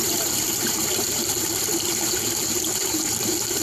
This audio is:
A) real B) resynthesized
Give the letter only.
B